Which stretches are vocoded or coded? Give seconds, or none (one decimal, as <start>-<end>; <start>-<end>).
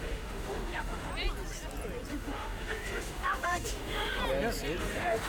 0.0-1.1; 2.1-4.2; 4.8-5.3